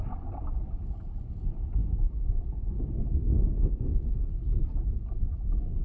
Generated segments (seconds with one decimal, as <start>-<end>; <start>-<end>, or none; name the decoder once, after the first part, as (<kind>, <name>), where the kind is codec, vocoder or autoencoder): 1.8-4.3 (codec, SNAC)